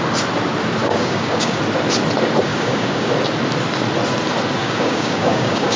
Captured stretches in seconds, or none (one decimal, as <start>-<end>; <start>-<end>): 0.0-0.8; 1.6-2.5; 3.1-4.6